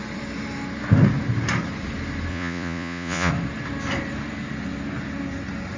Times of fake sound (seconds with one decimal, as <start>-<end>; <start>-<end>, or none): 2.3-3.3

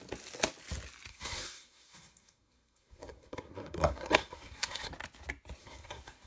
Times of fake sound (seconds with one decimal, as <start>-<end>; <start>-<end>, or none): 1.1-4.9; 5.6-6.3

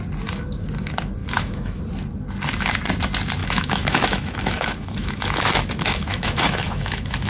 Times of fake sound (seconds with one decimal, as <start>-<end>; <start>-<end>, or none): 1.2-1.8; 3.4-7.3

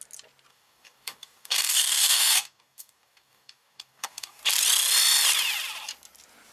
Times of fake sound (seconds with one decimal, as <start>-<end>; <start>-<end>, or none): 0.5-4.4